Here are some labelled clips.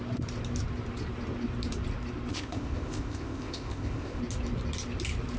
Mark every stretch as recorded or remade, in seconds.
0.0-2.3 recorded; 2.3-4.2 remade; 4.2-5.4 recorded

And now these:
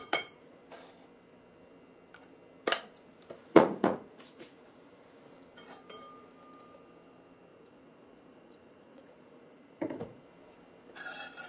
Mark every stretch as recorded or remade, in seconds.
0.0-0.6 remade; 0.6-3.4 recorded; 3.4-5.2 remade; 5.2-7.5 recorded; 7.5-10.2 remade; 10.2-11.5 recorded

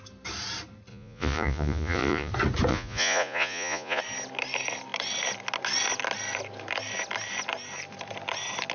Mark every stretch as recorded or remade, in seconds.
0.0-0.9 recorded; 0.9-2.3 remade; 2.3-2.7 recorded; 2.7-4.0 remade; 4.0-8.7 recorded

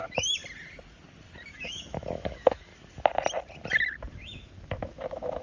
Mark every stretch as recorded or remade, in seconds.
0.0-0.4 remade; 0.4-1.5 recorded; 1.5-2.7 remade; 2.7-4.1 recorded; 4.1-5.4 remade

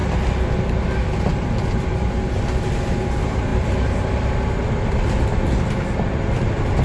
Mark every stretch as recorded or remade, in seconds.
0.0-6.8 recorded

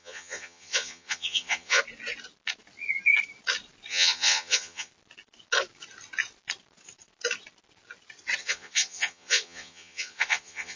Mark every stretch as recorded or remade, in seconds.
0.0-1.8 remade; 1.8-3.9 recorded; 3.9-4.9 remade; 4.9-8.4 recorded; 8.4-10.8 remade

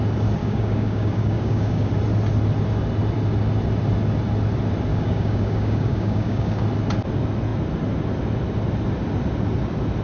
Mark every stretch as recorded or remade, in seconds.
0.0-0.4 recorded; 0.4-1.9 remade; 1.9-4.9 recorded; 4.9-6.6 remade; 6.6-10.0 recorded